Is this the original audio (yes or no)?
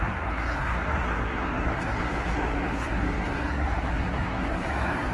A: no